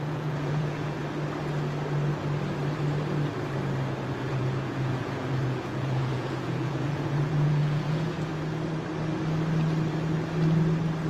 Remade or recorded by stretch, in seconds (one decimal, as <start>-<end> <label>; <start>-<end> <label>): 0.0-1.0 remade; 1.0-4.3 recorded; 4.3-8.3 remade; 8.3-11.1 recorded